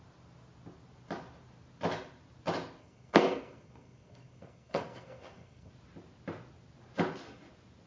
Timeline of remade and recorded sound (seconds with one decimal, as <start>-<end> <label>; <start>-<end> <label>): 0.0-2.8 recorded; 2.8-5.7 remade; 5.7-7.9 recorded